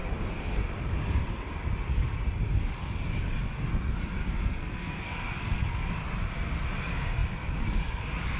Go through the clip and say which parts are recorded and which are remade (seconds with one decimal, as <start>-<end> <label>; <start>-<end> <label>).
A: 0.0-4.2 recorded; 4.2-5.9 remade; 5.9-8.4 recorded